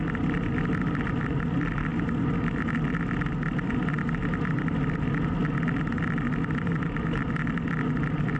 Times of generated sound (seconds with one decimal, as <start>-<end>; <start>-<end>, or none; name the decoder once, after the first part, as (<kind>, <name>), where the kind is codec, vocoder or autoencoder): none